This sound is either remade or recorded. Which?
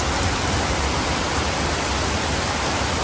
recorded